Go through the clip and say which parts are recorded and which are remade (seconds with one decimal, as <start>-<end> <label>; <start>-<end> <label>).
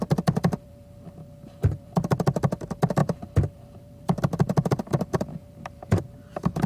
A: 0.0-6.7 remade